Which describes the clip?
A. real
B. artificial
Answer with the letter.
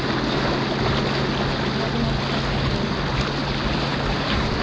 A